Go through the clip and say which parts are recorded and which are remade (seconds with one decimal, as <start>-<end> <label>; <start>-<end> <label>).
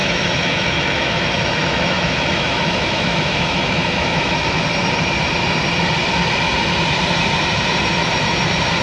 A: 0.0-4.6 remade; 4.6-8.8 recorded